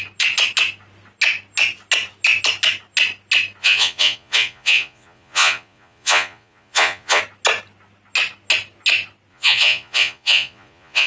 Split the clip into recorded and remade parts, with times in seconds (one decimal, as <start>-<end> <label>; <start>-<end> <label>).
0.0-3.6 recorded; 3.6-7.2 remade; 7.2-9.3 recorded; 9.3-11.1 remade